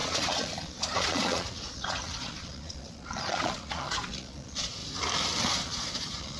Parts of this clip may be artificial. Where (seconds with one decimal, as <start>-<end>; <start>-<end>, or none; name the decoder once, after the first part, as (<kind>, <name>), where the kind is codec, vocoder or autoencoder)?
0.0-4.8 (vocoder, Vocos); 5.4-6.4